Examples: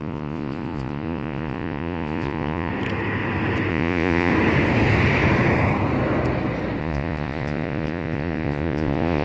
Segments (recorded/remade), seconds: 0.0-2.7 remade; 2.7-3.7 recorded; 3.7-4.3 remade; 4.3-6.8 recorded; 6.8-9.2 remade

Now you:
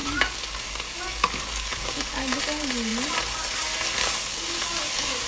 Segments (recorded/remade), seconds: 0.0-2.4 remade; 2.4-4.0 recorded; 4.0-5.3 remade

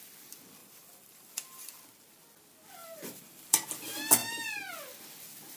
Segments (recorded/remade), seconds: 0.0-0.6 recorded; 0.6-1.7 remade; 1.7-2.8 recorded; 2.8-3.7 remade; 3.7-5.6 recorded

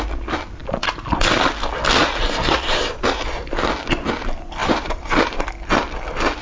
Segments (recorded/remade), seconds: 0.0-2.0 recorded; 2.0-3.3 remade; 3.3-4.6 recorded; 4.6-5.5 remade; 5.5-6.4 recorded

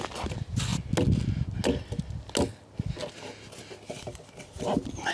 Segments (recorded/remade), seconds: 0.0-5.1 recorded

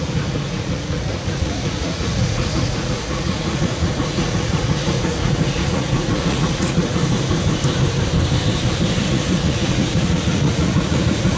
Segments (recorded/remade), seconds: 0.0-7.0 remade; 7.0-9.1 recorded; 9.1-11.4 remade

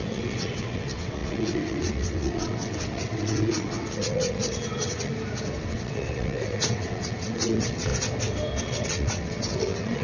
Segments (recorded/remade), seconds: 0.0-5.1 remade; 5.1-5.6 recorded; 5.6-7.9 remade; 7.9-8.6 recorded; 8.6-10.0 remade